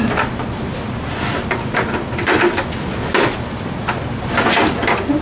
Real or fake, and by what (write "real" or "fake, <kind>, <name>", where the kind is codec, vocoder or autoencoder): real